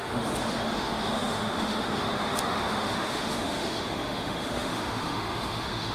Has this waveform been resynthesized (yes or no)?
yes